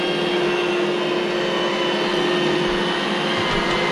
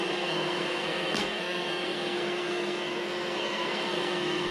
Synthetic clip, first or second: second